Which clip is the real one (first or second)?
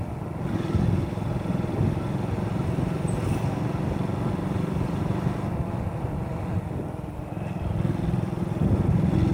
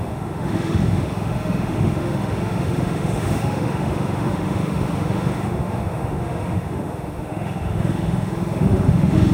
first